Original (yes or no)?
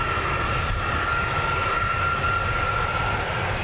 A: yes